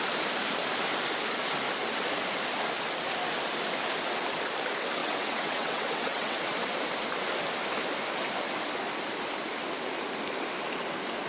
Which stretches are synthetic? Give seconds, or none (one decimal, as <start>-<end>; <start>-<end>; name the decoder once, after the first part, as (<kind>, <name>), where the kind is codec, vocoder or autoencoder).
5.0-6.4 (vocoder, WaveNeXt)